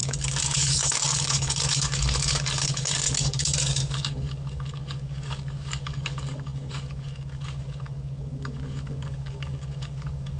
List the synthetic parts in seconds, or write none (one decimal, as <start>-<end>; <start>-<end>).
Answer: 0.0-10.4